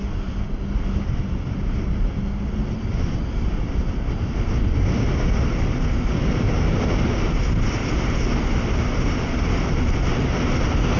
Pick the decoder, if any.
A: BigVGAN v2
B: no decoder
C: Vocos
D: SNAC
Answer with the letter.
B